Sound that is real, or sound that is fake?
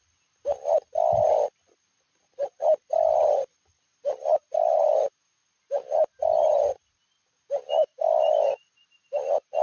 real